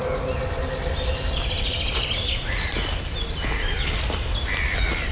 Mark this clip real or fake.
real